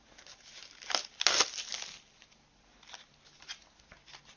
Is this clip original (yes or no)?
yes